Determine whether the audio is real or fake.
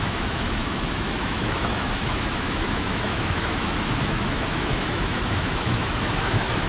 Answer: fake